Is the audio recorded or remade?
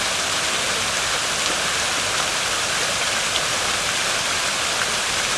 recorded